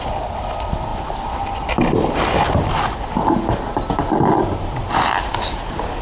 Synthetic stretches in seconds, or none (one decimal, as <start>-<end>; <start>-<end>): none